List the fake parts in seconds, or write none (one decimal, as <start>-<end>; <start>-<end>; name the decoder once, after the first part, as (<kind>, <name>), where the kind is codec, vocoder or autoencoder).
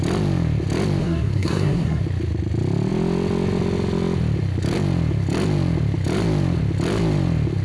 1.0-2.0 (codec, SNAC)